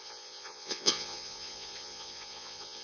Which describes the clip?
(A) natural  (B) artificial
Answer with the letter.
B